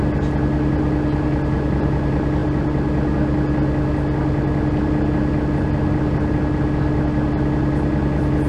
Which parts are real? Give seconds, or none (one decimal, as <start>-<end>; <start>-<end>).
0.0-8.5